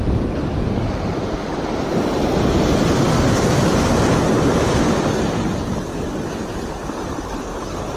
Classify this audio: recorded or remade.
recorded